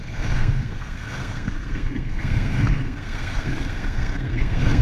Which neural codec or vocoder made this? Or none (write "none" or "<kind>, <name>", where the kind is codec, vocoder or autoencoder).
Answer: codec, SNAC